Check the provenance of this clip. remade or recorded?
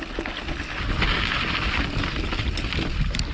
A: recorded